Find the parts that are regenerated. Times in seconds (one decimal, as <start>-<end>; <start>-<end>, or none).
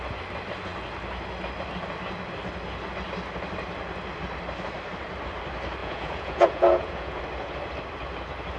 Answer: 5.8-7.2